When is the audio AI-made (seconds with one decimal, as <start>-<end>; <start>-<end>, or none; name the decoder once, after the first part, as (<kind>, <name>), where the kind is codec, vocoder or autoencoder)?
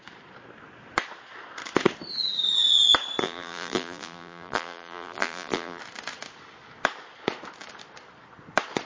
3.2-5.8 (vocoder, BigVGAN v2)